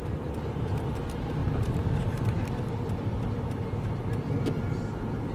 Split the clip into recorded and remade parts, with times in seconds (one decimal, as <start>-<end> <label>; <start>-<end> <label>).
0.0-5.3 remade

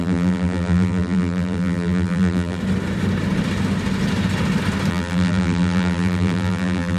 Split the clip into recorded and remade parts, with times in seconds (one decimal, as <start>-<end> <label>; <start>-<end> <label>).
0.0-2.6 remade; 2.6-4.9 recorded; 4.9-7.0 remade

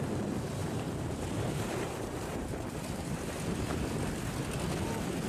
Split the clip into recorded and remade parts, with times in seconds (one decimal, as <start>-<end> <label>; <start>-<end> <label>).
0.0-0.6 recorded; 0.6-3.8 remade; 3.8-5.3 recorded

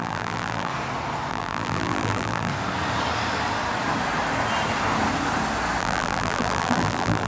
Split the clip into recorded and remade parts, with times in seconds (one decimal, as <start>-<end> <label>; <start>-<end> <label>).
0.0-0.7 remade; 0.7-1.3 recorded; 1.3-2.5 remade; 2.5-5.8 recorded; 5.8-7.3 remade